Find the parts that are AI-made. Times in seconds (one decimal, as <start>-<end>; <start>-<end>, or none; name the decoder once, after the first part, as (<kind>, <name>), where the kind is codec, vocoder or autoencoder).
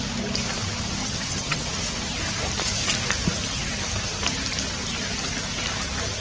1.0-1.6 (vocoder, HiFi-GAN)